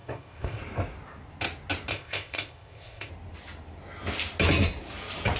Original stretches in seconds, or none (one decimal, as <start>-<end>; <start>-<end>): 0.6-1.9; 3.1-5.4